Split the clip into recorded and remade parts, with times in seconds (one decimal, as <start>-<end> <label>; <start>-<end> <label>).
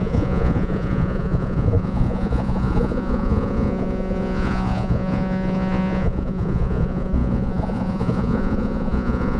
0.0-9.4 remade